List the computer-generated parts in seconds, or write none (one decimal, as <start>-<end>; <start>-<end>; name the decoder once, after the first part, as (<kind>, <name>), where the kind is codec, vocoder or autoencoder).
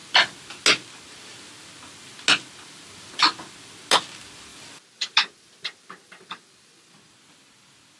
4.5-8.0 (vocoder, BigVGAN v2)